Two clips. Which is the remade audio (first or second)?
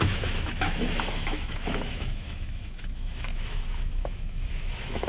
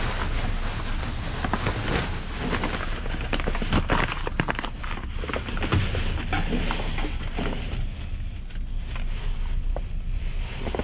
first